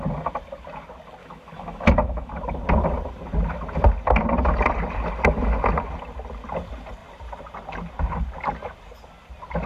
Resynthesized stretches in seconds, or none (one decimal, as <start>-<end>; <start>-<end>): 1.2-2.3